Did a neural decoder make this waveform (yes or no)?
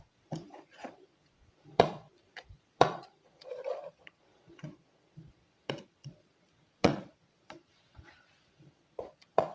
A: yes